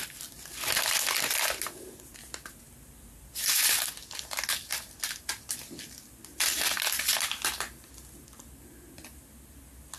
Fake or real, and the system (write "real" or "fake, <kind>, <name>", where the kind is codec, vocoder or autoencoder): real